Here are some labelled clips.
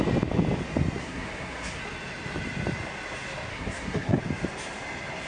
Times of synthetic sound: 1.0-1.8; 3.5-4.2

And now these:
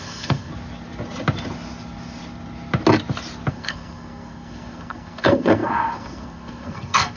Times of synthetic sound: 0.0-0.5; 3.5-7.2

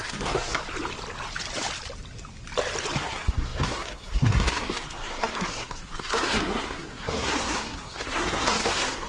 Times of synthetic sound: 0.0-0.6; 3.0-9.1

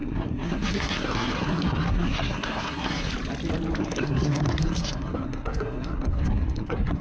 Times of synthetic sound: 0.0-3.1; 3.8-7.0

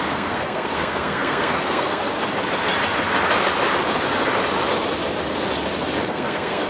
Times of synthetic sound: 0.0-2.1; 6.1-6.7

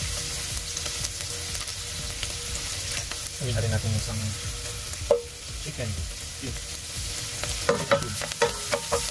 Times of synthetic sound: none

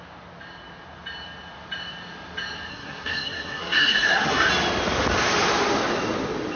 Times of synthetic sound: 2.7-4.5

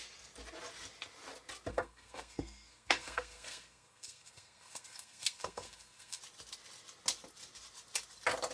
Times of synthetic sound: 1.7-6.2